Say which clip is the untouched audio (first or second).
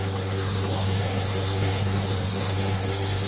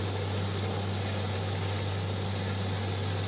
second